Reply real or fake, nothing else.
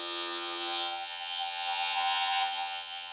fake